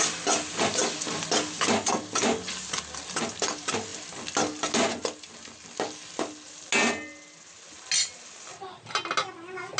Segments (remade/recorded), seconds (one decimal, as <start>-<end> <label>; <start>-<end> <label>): 0.0-9.8 recorded